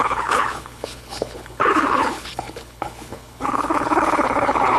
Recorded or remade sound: remade